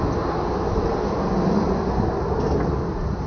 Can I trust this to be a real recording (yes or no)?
yes